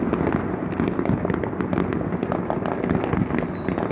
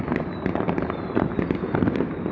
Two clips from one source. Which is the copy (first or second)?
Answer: second